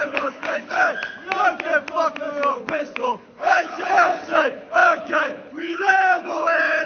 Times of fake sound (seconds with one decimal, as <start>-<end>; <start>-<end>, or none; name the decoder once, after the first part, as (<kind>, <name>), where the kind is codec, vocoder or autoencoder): 0.0-0.9 (codec, HILCodec); 2.5-6.9